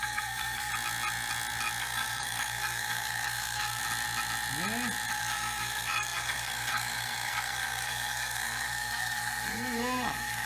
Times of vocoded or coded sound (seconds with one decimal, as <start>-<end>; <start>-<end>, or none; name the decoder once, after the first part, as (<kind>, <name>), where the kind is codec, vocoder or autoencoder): 0.0-0.7 (codec, SNAC); 1.8-3.8; 5.1-10.5